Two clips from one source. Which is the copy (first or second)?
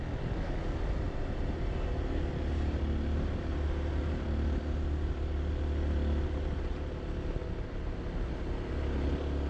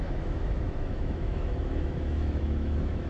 second